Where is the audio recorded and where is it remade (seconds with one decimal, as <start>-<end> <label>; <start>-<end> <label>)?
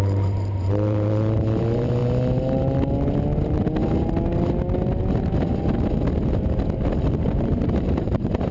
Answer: 0.0-2.0 remade; 2.0-7.1 recorded; 7.1-8.5 remade